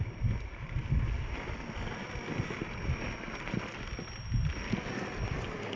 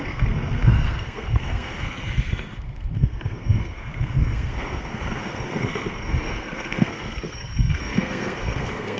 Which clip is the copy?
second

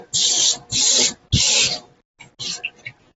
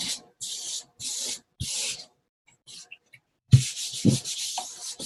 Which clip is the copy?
second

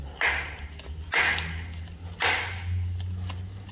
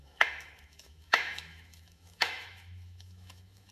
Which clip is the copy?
second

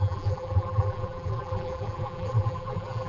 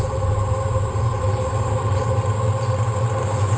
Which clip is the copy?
first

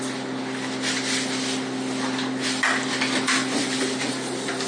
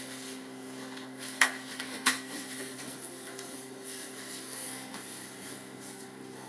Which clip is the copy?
second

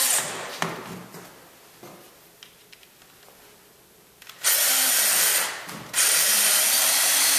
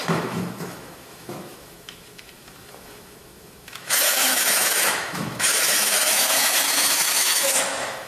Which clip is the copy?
second